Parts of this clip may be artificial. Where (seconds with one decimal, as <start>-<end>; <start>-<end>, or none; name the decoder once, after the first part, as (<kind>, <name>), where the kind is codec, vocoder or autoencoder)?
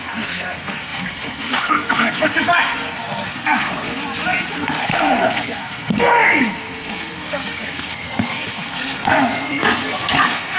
0.0-4.0 (codec, SNAC); 4.5-10.6